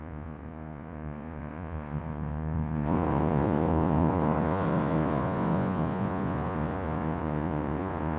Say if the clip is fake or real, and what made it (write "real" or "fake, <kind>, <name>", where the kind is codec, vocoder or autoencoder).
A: fake, vocoder, Vocos